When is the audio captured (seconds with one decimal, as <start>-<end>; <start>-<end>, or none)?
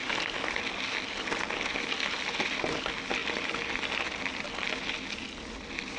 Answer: 0.0-6.0